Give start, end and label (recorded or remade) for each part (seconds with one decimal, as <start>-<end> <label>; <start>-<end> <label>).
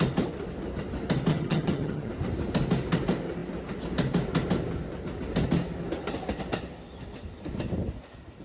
0.0-1.3 recorded; 1.3-2.1 remade; 2.1-8.4 recorded